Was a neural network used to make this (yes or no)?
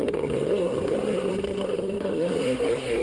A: yes